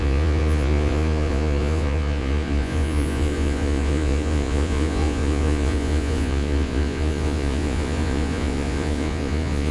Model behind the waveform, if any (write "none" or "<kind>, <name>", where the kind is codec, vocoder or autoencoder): vocoder, Vocos